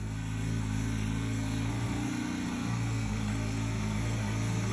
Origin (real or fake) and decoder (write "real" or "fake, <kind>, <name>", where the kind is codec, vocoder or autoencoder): fake, codec, SNAC